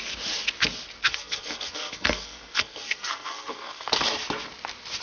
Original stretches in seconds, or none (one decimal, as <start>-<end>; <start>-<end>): 0.0-1.0; 4.0-5.0